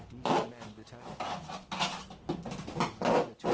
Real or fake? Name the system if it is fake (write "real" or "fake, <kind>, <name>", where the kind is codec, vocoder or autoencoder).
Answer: real